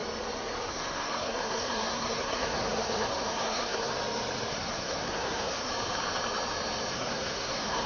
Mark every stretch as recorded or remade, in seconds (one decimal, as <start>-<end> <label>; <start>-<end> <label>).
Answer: 0.0-0.7 recorded; 0.7-3.9 remade; 3.9-4.5 recorded; 4.5-5.7 remade; 5.7-6.9 recorded; 6.9-7.9 remade